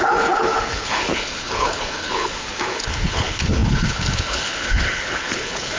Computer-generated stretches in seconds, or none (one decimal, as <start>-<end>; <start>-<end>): 0.0-5.8